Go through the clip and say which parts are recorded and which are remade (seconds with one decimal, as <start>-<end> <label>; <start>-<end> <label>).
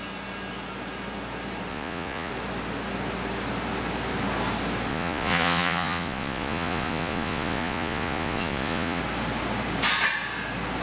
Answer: 0.0-1.7 recorded; 1.7-2.3 remade; 2.3-4.9 recorded; 4.9-9.0 remade; 9.0-10.8 recorded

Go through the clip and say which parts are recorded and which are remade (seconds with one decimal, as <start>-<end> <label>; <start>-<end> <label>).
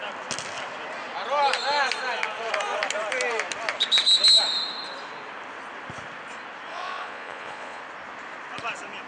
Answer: 0.0-6.7 recorded; 6.7-7.8 remade; 7.8-9.1 recorded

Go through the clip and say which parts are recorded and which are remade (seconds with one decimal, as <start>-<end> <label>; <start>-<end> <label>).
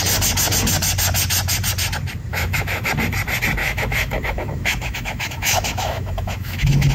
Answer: 0.0-2.3 recorded; 2.3-2.9 remade; 2.9-3.6 recorded; 3.6-6.9 remade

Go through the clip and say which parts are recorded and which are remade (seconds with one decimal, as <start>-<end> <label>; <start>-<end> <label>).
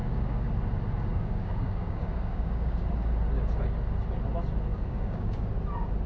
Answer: 0.0-0.5 remade; 0.5-1.1 recorded; 1.1-2.9 remade; 2.9-4.7 recorded; 4.7-5.5 remade; 5.5-6.1 recorded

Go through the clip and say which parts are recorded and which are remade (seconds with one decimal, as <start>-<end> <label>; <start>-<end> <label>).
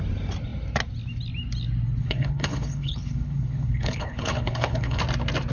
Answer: 0.0-2.0 recorded; 2.0-5.0 remade; 5.0-5.5 recorded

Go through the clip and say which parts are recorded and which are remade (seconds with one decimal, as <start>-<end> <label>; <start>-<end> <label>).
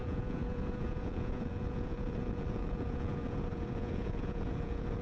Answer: 0.0-5.0 remade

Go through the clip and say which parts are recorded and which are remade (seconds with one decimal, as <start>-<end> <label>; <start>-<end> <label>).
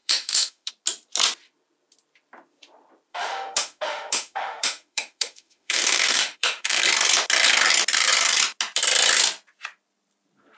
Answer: 0.0-0.7 remade; 0.7-3.1 recorded; 3.1-6.8 remade; 6.8-10.6 recorded